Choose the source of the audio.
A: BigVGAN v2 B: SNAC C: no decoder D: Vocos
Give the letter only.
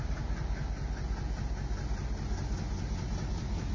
C